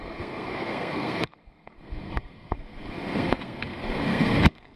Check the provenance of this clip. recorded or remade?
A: remade